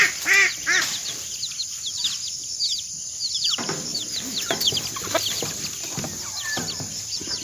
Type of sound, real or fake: real